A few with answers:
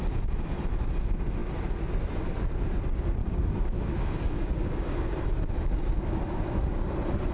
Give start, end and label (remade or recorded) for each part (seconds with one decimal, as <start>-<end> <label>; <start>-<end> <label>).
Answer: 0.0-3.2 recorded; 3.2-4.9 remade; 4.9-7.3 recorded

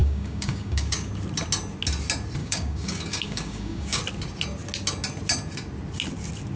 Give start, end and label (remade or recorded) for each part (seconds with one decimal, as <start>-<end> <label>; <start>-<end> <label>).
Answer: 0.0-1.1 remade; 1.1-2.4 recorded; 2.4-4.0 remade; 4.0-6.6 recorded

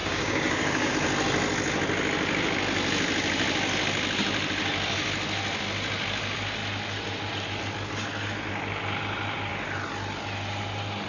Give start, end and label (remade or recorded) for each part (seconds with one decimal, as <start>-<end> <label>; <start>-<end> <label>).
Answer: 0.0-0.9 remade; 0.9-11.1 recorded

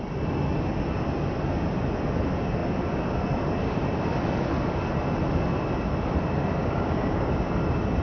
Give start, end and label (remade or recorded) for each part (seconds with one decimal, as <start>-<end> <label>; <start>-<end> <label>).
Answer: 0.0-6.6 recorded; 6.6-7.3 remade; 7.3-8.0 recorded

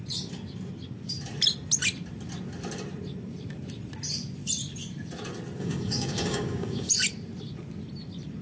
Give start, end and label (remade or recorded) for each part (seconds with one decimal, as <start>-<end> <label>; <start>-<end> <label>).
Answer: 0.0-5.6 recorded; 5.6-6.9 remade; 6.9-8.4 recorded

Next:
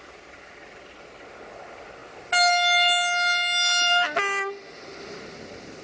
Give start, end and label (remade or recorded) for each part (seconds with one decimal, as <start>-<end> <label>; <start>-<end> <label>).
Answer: 0.0-5.8 recorded

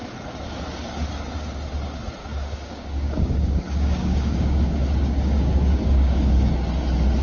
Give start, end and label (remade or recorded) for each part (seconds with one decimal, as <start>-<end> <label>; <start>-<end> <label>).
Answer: 0.0-2.2 recorded; 2.2-6.5 remade; 6.5-7.2 recorded